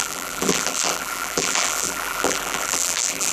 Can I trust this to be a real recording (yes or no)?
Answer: no